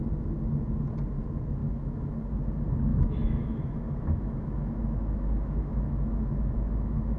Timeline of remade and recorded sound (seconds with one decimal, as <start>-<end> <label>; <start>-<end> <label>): 0.0-1.6 recorded; 1.6-2.1 remade; 2.1-2.9 recorded; 2.9-7.2 remade